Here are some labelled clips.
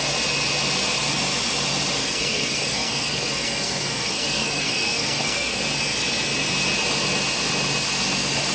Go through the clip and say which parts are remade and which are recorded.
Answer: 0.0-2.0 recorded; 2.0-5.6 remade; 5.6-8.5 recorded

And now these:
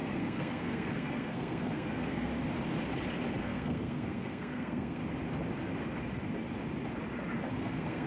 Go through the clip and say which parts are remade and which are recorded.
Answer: 0.0-2.3 remade; 2.3-3.4 recorded; 3.4-5.0 remade; 5.0-7.5 recorded; 7.5-8.1 remade

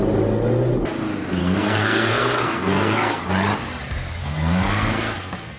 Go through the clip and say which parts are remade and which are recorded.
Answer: 0.0-1.4 recorded; 1.4-3.2 remade; 3.2-4.2 recorded; 4.2-5.6 remade

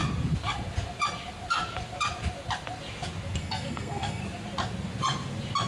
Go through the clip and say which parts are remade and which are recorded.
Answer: 0.0-3.4 recorded; 3.4-4.2 remade; 4.2-5.7 recorded

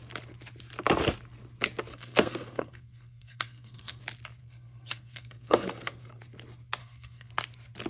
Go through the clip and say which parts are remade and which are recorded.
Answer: 0.0-1.9 recorded; 1.9-4.0 remade; 4.0-4.4 recorded; 4.4-6.2 remade; 6.2-6.8 recorded; 6.8-7.3 remade; 7.3-7.9 recorded

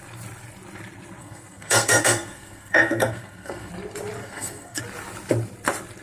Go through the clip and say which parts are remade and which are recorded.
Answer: 0.0-1.2 recorded; 1.2-3.7 remade; 3.7-4.2 recorded; 4.2-4.8 remade; 4.8-6.0 recorded